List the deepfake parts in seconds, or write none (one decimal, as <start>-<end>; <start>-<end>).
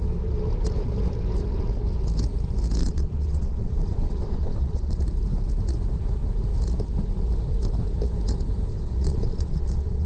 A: 2.8-5.0; 8.7-10.1